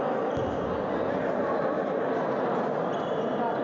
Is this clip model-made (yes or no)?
no